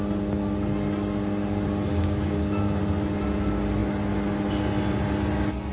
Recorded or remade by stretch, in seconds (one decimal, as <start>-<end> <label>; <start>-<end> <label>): 0.0-1.9 recorded; 1.9-2.8 remade; 2.8-5.7 recorded

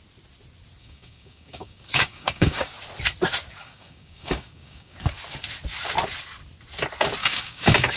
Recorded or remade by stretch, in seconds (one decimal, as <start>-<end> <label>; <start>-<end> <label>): 0.0-0.8 recorded; 0.8-2.7 remade; 2.7-3.6 recorded; 3.6-5.1 remade; 5.1-7.2 recorded; 7.2-8.0 remade

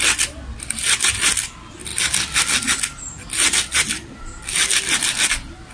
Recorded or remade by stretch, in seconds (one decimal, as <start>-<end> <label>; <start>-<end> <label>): 0.0-5.7 recorded

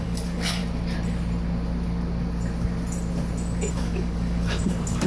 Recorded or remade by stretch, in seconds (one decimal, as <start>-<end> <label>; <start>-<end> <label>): 0.0-0.6 remade; 0.6-3.7 recorded; 3.7-5.1 remade

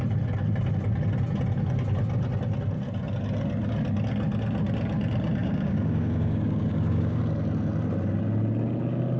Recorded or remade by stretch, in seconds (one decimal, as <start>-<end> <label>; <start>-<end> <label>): 0.0-5.4 recorded; 5.4-7.2 remade; 7.2-9.2 recorded

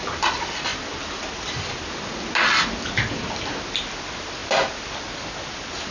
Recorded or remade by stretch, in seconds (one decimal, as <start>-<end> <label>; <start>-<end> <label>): 0.0-5.9 recorded

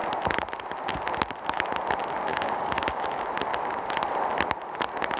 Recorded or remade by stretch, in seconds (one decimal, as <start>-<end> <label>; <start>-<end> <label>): 0.0-2.3 recorded; 2.3-3.1 remade; 3.1-5.2 recorded